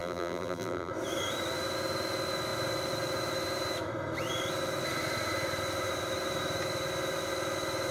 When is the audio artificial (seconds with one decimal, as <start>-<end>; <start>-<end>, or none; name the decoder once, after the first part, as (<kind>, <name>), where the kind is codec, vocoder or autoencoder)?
0.0-0.9 (vocoder, BigVGAN v2)